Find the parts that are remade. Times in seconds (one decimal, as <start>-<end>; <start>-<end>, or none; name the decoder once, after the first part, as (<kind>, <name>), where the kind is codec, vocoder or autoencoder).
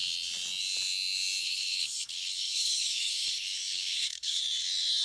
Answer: 1.4-4.4 (codec, HILCodec)